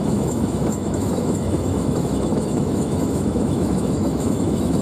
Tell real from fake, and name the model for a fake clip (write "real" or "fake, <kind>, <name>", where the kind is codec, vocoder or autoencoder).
fake, autoencoder, DAC-VAE